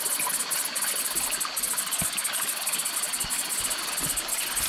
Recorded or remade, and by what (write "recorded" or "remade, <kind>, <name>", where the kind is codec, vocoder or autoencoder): recorded